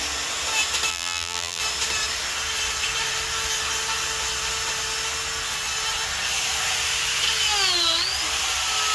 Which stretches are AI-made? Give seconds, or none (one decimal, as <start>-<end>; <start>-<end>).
0.9-1.6